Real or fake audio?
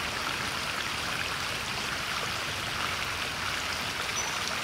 real